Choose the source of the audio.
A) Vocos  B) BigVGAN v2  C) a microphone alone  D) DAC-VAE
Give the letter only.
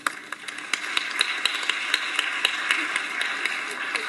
C